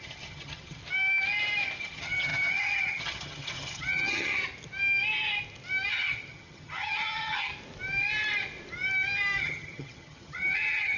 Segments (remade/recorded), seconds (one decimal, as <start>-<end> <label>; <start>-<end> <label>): 0.0-0.8 remade; 0.8-1.8 recorded; 1.8-4.4 remade; 4.4-5.9 recorded; 5.9-7.5 remade; 7.5-9.4 recorded; 9.4-11.0 remade